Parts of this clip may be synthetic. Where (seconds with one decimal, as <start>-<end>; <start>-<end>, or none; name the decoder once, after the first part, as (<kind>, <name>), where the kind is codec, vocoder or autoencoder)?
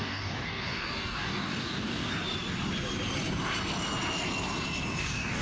0.0-2.1 (codec, DAC); 5.0-5.4